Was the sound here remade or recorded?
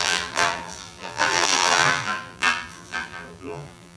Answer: remade